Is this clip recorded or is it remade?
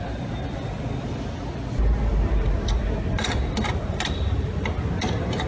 recorded